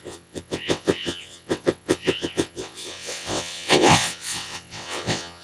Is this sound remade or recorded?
remade